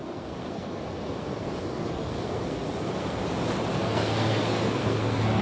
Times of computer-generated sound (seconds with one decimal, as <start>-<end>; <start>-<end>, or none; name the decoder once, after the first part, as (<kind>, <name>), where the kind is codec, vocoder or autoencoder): 0.0-3.2 (codec, SNAC); 3.7-5.4